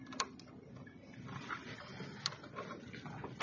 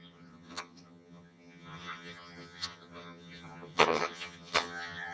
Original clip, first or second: first